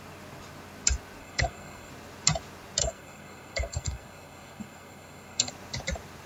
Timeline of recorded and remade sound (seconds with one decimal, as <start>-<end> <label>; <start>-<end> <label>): 0.0-1.2 recorded; 1.2-1.9 remade; 1.9-2.8 recorded; 2.8-5.5 remade; 5.5-6.3 recorded